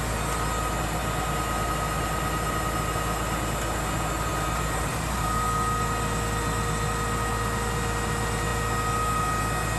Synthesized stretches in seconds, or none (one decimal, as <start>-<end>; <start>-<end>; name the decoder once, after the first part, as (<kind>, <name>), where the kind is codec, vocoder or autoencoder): 4.3-5.4 (vocoder, BigVGAN v2)